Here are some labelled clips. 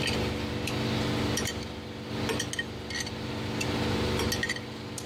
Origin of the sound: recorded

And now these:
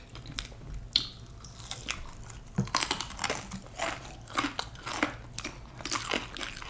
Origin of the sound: recorded